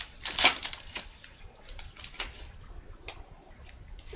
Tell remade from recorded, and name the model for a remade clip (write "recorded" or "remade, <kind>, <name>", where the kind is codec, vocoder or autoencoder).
recorded